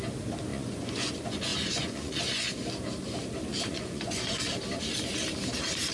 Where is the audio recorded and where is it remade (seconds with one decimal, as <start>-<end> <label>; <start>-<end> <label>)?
0.0-0.5 recorded; 0.5-1.1 remade; 1.1-1.5 recorded; 1.5-2.2 remade; 2.2-3.5 recorded; 3.5-4.5 remade; 4.5-5.9 recorded